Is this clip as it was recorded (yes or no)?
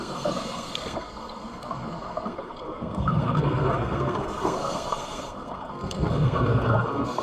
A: no